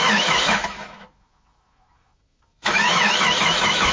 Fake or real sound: fake